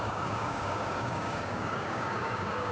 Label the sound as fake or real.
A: fake